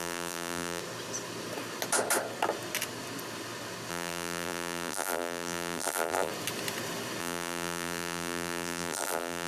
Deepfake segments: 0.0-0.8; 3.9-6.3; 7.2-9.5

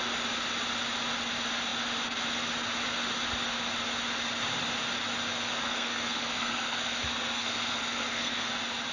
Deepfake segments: 5.3-8.5

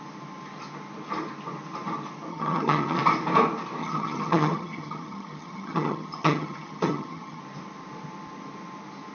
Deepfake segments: 2.3-3.0; 3.8-7.4

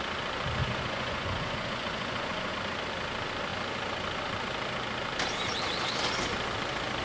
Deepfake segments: 0.6-2.5

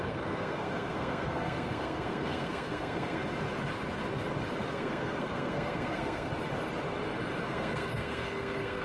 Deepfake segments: 0.0-3.2; 4.7-6.3; 7.4-8.8